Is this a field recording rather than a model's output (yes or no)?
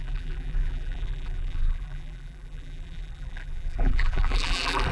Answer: no